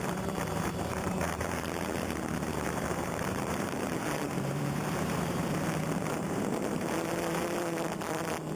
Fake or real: fake